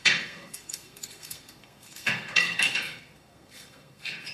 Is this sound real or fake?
fake